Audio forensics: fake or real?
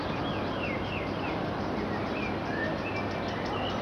real